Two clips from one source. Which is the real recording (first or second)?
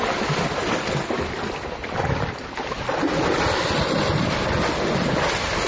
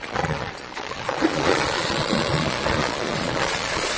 first